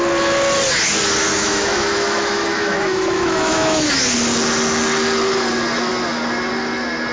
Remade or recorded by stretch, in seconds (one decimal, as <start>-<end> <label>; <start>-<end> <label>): 0.0-1.3 recorded; 1.3-3.9 remade; 3.9-7.1 recorded